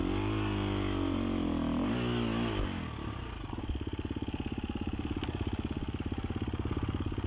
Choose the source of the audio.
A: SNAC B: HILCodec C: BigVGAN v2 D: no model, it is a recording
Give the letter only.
D